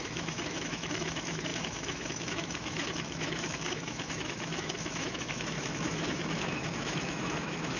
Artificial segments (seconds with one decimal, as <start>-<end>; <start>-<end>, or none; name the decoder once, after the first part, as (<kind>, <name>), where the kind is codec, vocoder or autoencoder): 0.0-7.8 (autoencoder, DAC-VAE)

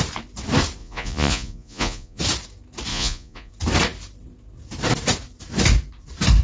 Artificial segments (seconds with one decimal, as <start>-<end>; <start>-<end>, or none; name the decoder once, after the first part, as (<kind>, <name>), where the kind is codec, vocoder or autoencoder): 0.8-2.2 (vocoder, Vocos); 2.9-3.5

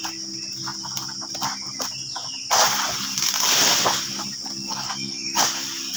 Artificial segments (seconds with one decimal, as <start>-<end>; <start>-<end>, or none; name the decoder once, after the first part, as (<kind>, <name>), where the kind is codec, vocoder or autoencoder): 4.7-5.4 (codec, DAC)